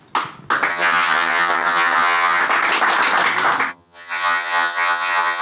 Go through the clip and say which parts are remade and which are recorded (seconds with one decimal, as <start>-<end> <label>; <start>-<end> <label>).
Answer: 0.0-0.7 recorded; 0.7-2.4 remade; 2.4-3.7 recorded; 3.7-5.4 remade